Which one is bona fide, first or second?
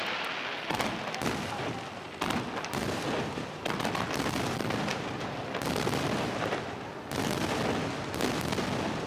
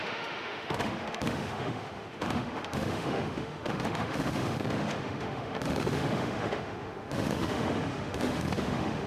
first